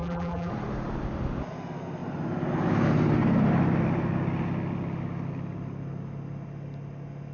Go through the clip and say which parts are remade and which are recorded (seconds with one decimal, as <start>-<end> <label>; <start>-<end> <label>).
0.0-0.5 remade; 0.5-7.3 recorded